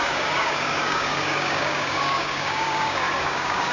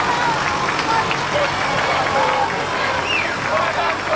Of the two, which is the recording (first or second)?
second